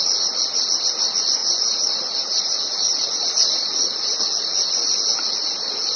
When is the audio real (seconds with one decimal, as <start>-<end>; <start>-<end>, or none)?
0.0-1.4; 4.2-6.0